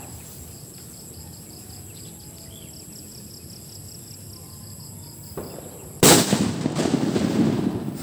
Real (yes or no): yes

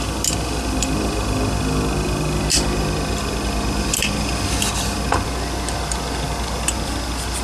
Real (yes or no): yes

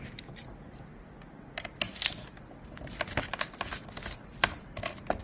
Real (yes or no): yes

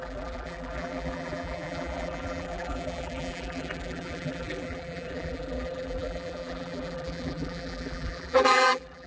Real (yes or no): no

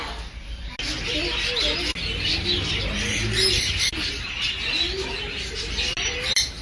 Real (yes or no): yes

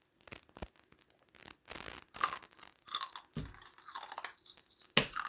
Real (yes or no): yes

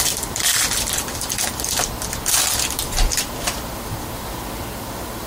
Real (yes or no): no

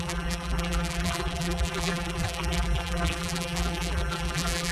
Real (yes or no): no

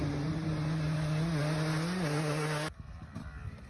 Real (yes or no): yes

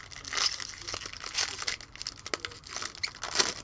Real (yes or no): yes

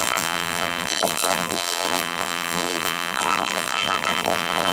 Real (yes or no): no